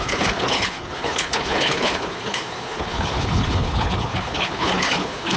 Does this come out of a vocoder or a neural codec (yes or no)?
yes